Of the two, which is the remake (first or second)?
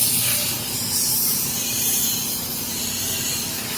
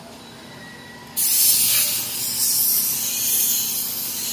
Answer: first